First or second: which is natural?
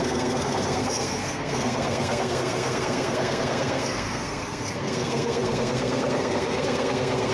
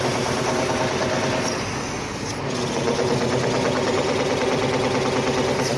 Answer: second